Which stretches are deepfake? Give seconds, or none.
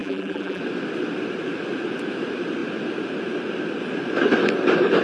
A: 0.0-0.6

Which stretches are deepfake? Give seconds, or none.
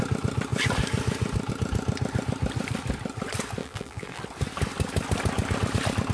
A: 3.6-4.2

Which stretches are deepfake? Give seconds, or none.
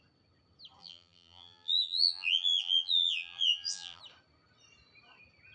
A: 0.8-4.0